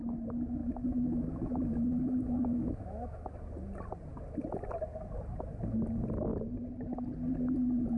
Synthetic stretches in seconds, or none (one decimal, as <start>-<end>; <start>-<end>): 0.6-3.3